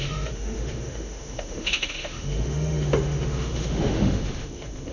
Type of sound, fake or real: fake